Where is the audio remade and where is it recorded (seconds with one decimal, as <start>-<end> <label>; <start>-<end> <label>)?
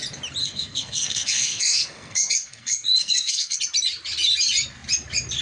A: 0.0-0.4 recorded; 0.4-3.6 remade; 3.6-5.4 recorded